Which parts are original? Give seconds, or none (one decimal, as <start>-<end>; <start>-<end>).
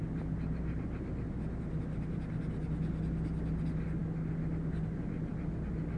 0.0-6.0